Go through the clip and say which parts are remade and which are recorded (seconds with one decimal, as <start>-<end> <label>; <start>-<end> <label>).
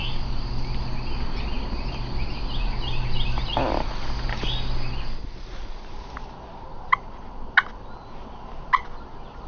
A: 0.0-9.5 recorded